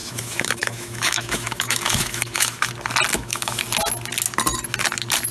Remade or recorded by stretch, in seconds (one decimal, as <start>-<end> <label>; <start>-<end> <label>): 0.0-2.7 remade; 2.7-3.1 recorded; 3.1-3.6 remade; 3.6-5.3 recorded